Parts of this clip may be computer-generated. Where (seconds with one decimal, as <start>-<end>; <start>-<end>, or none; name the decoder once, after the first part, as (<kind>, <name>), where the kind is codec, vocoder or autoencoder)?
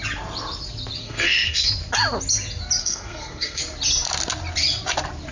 1.0-1.7 (codec, SNAC); 2.8-3.6